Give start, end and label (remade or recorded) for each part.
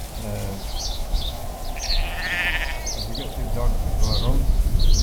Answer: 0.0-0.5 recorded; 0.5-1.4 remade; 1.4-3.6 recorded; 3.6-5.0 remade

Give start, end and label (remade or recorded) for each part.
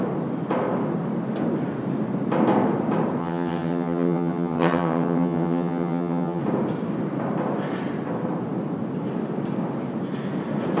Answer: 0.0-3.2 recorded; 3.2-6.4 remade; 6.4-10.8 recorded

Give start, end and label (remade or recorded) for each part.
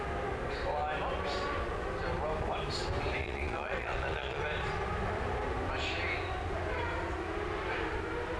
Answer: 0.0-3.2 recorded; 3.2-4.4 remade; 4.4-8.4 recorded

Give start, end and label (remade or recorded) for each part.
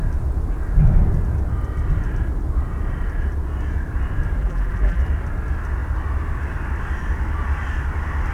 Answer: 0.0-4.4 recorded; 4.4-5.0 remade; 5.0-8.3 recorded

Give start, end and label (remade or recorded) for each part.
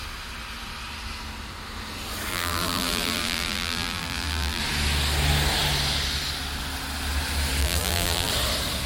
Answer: 0.0-2.3 recorded; 2.3-4.6 remade; 4.6-7.6 recorded; 7.6-8.3 remade; 8.3-8.9 recorded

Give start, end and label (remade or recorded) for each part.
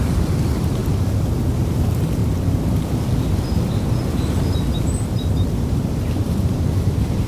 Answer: 0.0-0.8 remade; 0.8-1.8 recorded; 1.8-2.2 remade; 2.2-4.8 recorded; 4.8-7.3 remade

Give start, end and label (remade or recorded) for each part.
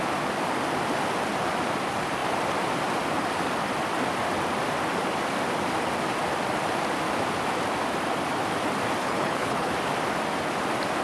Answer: 0.0-9.0 recorded; 9.0-9.7 remade; 9.7-11.0 recorded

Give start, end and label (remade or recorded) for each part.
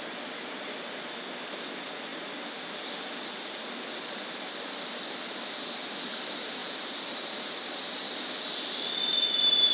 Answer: 0.0-2.1 recorded; 2.1-3.6 remade; 3.6-6.6 recorded; 6.6-9.0 remade; 9.0-9.7 recorded